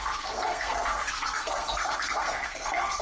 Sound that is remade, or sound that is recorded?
remade